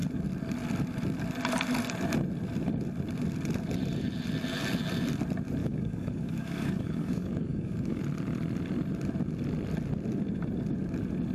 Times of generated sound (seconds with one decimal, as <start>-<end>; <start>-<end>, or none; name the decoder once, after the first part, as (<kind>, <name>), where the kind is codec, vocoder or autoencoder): 5.6-8.0 (codec, DAC)